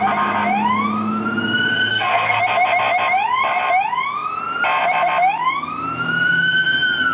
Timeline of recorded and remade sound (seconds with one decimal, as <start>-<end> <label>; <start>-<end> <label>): 0.0-1.9 recorded; 1.9-2.4 remade; 2.4-7.1 recorded